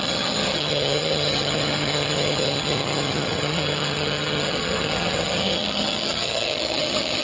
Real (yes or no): no